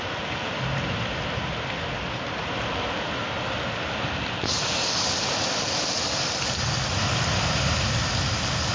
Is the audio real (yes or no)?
yes